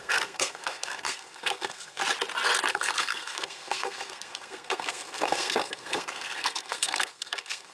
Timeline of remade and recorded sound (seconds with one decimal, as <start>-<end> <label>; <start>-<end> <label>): 0.0-2.0 remade; 2.0-2.7 recorded; 2.7-7.7 remade